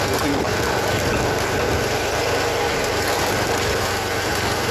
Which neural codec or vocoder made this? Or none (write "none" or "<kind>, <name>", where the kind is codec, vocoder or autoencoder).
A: none